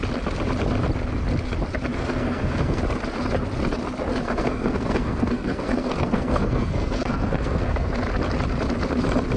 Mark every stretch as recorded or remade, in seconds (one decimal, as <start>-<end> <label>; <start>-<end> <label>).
0.0-1.9 recorded; 1.9-2.8 remade; 2.8-4.1 recorded; 4.1-7.9 remade; 7.9-9.4 recorded